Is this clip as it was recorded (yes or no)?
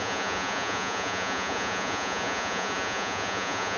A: no